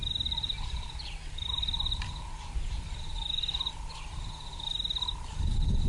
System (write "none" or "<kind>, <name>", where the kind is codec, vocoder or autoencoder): none